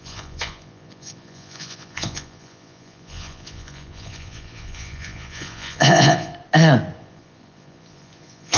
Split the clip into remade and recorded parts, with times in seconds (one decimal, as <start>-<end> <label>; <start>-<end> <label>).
0.0-6.3 remade; 6.3-7.0 recorded; 7.0-8.6 remade